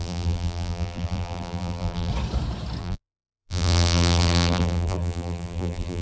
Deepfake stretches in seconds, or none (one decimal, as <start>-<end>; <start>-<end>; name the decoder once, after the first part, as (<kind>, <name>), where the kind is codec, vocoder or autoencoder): 0.0-2.1 (vocoder, BigVGAN v2); 2.8-6.0